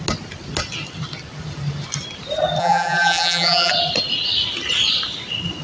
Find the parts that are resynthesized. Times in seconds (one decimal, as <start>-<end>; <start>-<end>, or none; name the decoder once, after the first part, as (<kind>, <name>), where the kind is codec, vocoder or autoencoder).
2.6-3.7 (vocoder, BigVGAN v2)